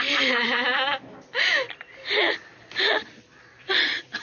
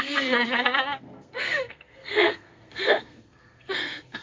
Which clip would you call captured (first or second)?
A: first